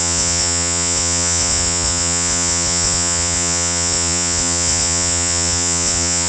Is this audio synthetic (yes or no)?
yes